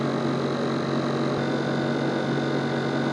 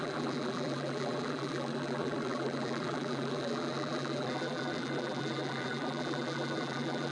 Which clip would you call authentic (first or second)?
first